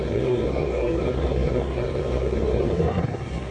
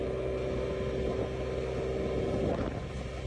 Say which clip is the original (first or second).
second